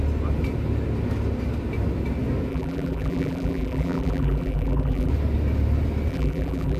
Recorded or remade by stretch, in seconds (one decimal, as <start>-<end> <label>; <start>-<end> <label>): 0.0-2.5 recorded; 2.5-5.1 remade; 5.1-6.1 recorded; 6.1-6.8 remade

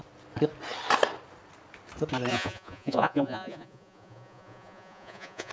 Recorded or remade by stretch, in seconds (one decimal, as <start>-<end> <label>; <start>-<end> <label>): 0.0-2.3 recorded; 2.3-5.5 remade